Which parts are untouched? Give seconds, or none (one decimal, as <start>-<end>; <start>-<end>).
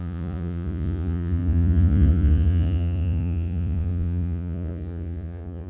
none